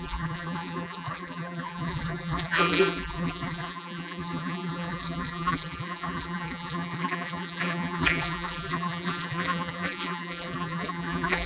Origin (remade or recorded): remade